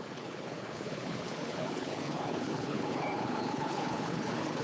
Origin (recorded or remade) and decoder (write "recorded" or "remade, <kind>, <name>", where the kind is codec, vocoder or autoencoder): remade, codec, HILCodec